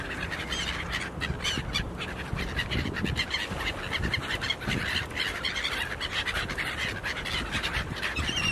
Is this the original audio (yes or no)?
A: yes